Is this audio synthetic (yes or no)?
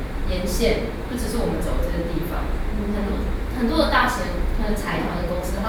yes